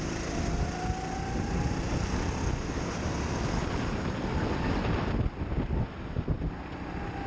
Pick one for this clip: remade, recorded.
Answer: recorded